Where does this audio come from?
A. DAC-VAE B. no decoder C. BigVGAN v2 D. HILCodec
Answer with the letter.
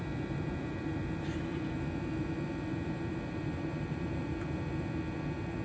C